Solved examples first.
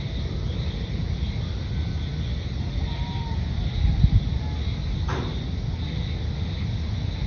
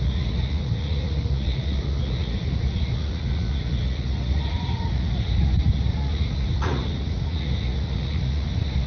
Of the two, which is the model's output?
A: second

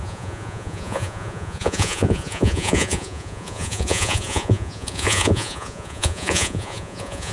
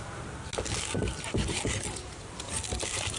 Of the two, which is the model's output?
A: first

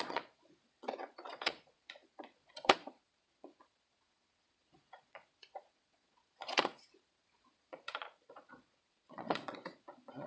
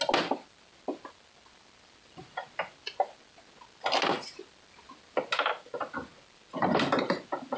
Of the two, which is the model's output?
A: first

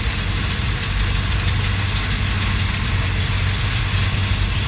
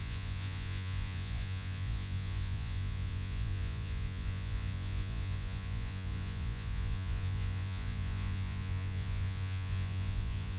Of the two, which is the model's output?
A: second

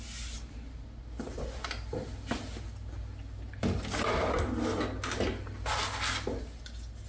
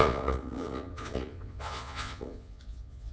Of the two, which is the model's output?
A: second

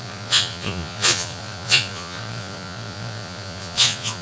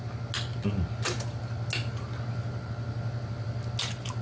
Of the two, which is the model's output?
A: first